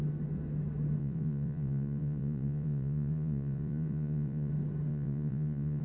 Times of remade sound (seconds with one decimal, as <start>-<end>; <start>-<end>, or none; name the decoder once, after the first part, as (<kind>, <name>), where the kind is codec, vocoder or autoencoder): 1.0-4.5 (vocoder, Vocos); 4.9-5.8